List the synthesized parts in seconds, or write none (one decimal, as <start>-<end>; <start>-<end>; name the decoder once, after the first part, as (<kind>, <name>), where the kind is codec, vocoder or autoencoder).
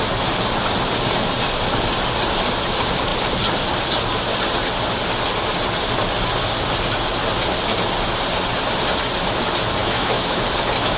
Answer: 9.8-10.4 (autoencoder, DAC-VAE)